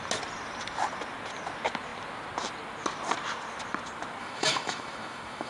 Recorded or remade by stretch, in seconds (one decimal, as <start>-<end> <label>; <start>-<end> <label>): 0.0-4.2 recorded; 4.2-5.5 remade